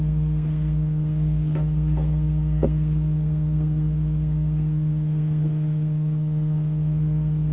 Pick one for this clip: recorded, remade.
remade